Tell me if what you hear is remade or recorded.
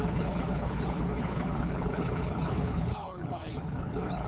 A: remade